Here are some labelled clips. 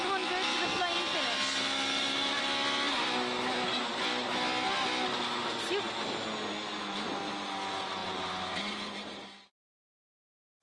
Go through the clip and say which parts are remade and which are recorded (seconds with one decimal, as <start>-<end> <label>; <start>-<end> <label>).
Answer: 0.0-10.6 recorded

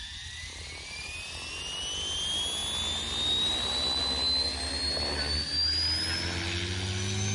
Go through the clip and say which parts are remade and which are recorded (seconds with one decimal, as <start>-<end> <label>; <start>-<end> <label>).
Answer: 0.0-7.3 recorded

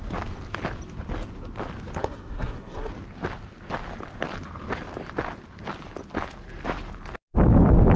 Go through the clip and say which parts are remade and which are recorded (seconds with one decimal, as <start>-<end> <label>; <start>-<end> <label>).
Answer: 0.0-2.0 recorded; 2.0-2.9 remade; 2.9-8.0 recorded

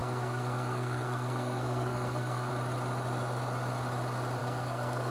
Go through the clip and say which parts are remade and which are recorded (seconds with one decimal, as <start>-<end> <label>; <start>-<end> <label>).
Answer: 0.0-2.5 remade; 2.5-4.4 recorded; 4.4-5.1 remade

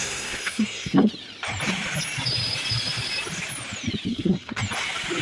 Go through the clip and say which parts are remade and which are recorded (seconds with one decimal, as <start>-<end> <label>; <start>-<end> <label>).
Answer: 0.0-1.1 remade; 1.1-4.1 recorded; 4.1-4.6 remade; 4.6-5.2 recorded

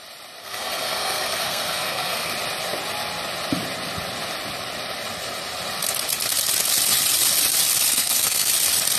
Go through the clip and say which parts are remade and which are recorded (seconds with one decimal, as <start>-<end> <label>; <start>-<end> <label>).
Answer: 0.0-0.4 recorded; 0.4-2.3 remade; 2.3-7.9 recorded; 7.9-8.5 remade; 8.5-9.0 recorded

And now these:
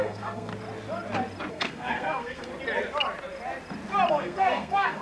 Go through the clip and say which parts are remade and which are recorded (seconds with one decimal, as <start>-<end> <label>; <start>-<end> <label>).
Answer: 0.0-0.5 remade; 0.5-1.5 recorded; 1.5-2.5 remade; 2.5-4.1 recorded; 4.1-5.0 remade

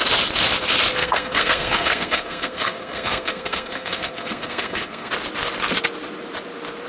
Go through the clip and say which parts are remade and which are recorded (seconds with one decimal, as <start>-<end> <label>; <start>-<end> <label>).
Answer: 0.0-1.0 recorded; 1.0-5.1 remade; 5.1-6.9 recorded